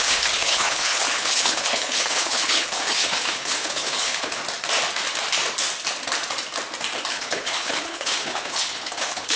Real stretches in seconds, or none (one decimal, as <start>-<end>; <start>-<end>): 4.4-7.1